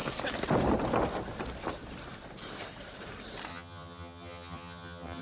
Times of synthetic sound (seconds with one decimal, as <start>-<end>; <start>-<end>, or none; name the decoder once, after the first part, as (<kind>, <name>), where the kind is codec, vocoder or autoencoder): 3.5-5.2 (vocoder, HiFi-GAN)